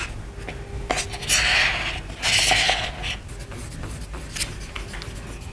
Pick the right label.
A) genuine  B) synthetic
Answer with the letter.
A